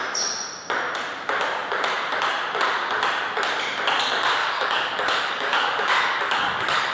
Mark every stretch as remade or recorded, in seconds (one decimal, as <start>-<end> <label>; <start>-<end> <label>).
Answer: 0.0-4.4 recorded; 4.4-6.9 remade